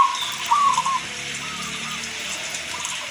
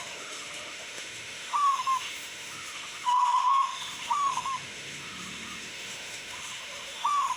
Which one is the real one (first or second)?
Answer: first